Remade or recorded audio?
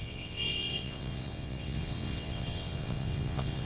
remade